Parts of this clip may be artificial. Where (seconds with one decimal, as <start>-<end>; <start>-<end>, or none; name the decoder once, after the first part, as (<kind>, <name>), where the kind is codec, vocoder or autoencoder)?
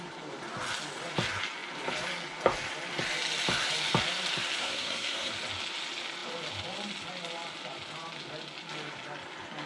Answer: 4.6-5.3 (codec, SNAC)